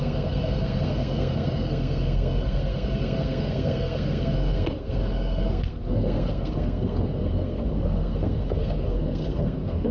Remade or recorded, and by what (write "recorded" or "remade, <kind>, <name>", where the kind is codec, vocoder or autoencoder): remade, codec, SNAC